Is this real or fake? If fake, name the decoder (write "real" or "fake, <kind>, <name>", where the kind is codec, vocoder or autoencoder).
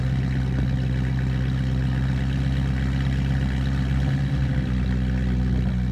real